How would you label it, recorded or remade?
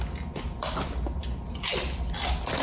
recorded